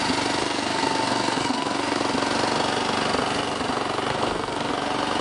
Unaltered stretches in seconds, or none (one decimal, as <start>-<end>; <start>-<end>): 0.0-0.4; 2.0-4.1; 4.7-5.2